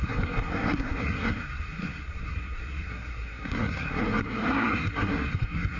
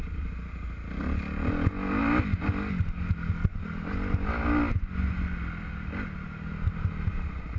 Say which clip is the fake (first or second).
first